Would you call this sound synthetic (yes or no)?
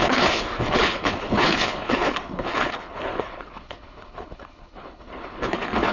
yes